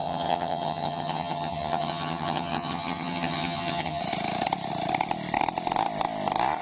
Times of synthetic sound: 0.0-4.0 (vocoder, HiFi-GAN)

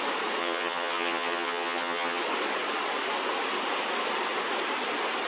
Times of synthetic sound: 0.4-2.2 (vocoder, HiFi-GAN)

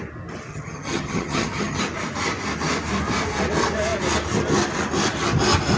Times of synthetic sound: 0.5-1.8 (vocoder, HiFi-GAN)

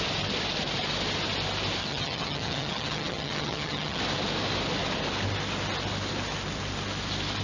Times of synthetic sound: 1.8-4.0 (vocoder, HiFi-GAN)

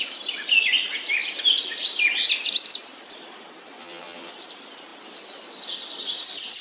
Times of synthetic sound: 3.8-4.3 (vocoder, HiFi-GAN)

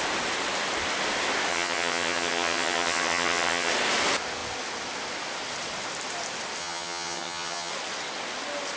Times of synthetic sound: 1.5-3.7 (vocoder, HiFi-GAN); 6.6-7.7

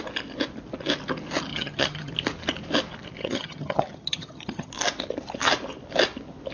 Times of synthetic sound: 1.5-2.1 (vocoder, HiFi-GAN); 3.2-4.7